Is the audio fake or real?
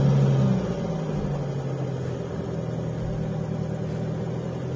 real